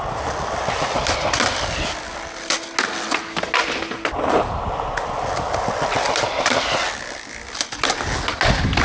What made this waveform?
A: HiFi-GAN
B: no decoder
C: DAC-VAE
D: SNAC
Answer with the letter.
B